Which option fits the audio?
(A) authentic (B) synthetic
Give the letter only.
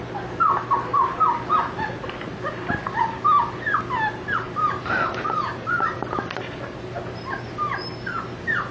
A